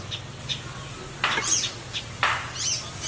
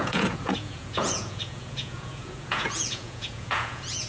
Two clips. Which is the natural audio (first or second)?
first